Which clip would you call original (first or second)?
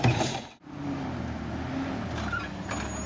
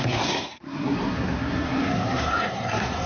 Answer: first